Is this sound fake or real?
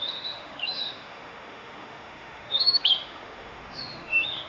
fake